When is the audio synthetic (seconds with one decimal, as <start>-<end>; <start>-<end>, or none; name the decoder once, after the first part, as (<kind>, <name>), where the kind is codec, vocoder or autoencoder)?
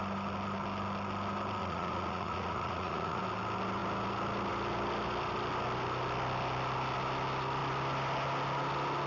1.6-3.2 (vocoder, Vocos)